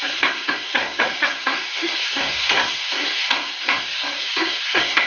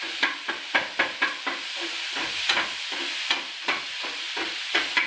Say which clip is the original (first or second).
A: second